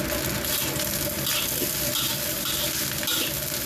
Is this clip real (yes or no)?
yes